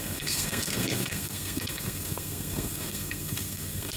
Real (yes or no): no